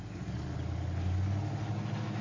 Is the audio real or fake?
real